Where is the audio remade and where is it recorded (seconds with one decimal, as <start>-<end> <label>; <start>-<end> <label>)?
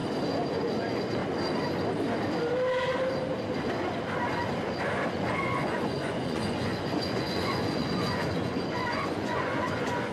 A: 0.0-0.5 recorded; 0.5-1.2 remade; 1.2-5.1 recorded; 5.1-10.1 remade